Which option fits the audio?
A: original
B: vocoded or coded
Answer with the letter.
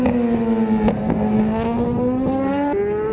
A